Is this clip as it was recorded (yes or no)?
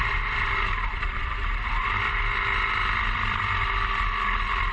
no